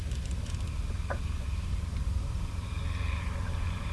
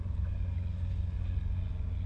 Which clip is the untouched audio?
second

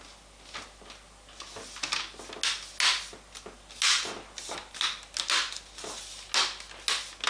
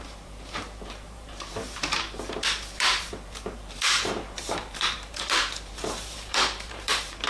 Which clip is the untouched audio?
first